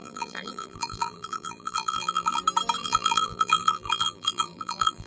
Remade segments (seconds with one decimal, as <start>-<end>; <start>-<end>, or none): 0.0-2.4; 2.8-5.1